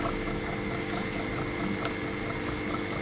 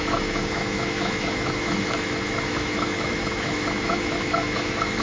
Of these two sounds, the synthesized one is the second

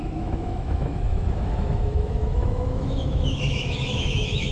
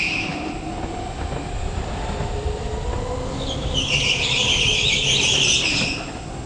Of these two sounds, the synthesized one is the first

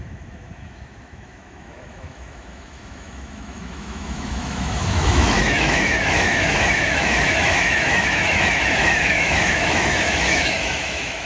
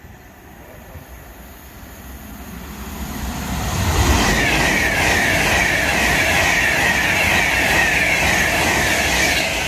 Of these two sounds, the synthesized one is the first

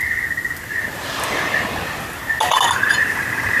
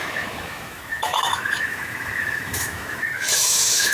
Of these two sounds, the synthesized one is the second